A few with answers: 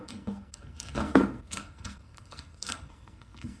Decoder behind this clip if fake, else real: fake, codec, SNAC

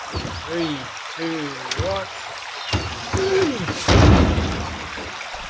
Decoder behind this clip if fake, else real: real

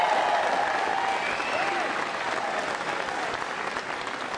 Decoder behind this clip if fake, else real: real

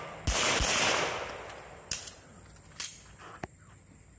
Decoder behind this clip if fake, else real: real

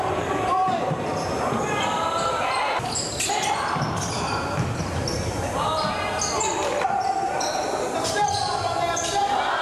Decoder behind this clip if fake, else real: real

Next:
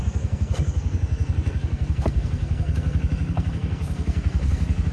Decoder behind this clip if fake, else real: fake, codec, SNAC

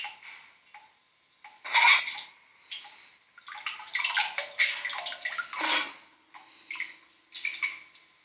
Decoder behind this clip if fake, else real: real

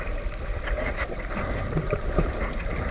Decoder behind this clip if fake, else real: real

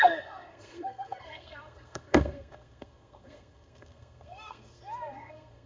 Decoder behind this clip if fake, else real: fake, codec, SNAC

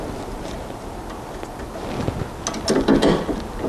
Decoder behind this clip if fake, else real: real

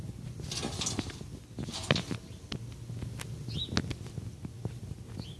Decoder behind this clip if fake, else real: real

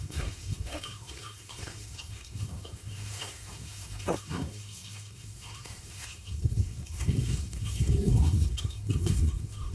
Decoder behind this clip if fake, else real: fake, codec, SNAC